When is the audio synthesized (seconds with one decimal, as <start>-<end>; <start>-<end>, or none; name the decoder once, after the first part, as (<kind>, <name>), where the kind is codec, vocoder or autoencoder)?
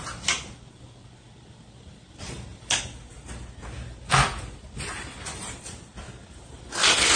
none